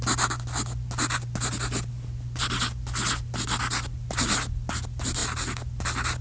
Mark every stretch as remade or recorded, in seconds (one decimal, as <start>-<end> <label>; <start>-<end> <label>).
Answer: 0.0-6.2 recorded